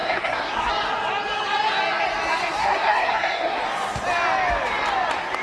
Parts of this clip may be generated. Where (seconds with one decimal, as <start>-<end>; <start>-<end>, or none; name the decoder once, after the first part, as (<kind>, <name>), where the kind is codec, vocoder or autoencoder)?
0.0-0.7 (codec, SNAC); 2.6-3.6